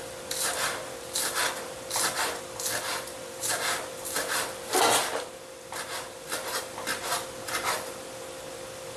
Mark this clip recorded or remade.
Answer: recorded